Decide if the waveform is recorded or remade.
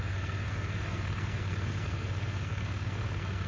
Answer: remade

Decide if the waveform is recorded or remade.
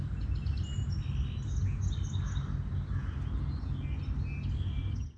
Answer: recorded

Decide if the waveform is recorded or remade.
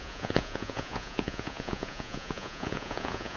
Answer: remade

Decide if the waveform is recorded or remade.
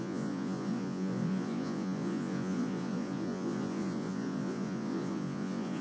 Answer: remade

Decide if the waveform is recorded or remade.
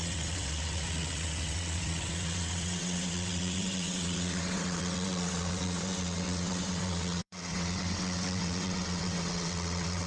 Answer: remade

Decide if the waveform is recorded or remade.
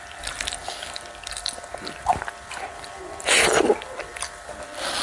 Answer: remade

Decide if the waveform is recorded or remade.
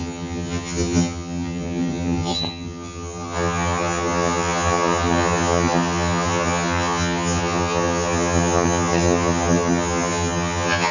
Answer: remade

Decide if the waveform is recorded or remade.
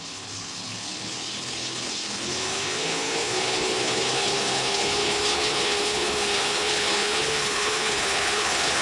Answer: remade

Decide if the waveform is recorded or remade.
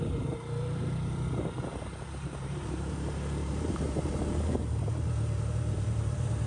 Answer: remade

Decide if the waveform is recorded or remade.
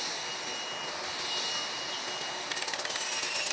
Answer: recorded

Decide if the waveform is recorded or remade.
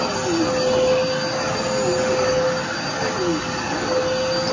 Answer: recorded